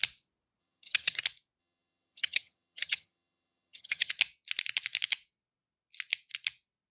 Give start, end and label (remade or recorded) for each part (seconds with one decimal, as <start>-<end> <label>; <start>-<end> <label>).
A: 0.0-0.6 recorded; 0.6-1.2 remade; 1.2-1.6 recorded; 1.6-4.1 remade; 4.1-6.9 recorded